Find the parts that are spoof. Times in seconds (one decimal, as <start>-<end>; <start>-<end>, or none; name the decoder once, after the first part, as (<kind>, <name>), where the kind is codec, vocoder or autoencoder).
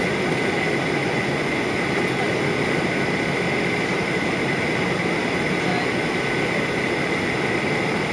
1.0-1.8 (vocoder, Vocos)